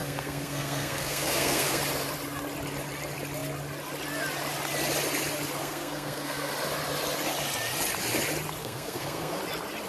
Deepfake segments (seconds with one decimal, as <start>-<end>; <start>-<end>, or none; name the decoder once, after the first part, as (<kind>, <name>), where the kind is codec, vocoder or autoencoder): 0.0-1.8 (codec, SNAC); 5.6-6.5; 8.6-9.4